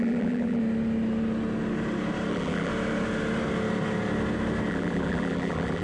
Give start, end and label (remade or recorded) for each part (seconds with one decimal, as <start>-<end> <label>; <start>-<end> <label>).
0.0-0.6 remade; 0.6-2.3 recorded; 2.3-2.7 remade; 2.7-4.7 recorded; 4.7-5.8 remade